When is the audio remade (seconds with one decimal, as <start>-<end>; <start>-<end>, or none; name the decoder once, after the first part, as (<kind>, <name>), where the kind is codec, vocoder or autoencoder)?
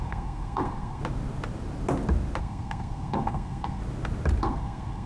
0.0-1.0 (codec, SNAC); 2.4-3.8; 4.4-5.1